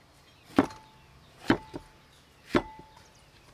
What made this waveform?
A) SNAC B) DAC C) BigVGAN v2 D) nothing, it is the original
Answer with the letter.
D